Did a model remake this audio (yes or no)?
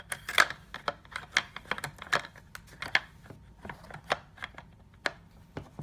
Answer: no